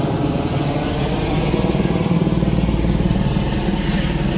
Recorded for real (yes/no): yes